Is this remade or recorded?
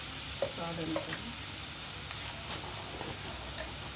recorded